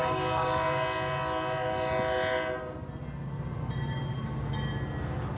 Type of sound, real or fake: real